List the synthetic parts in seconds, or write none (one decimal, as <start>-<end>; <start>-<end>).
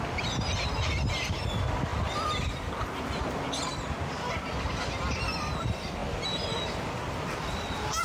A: none